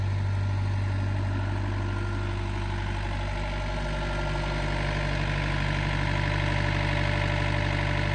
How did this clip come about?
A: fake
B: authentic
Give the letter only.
B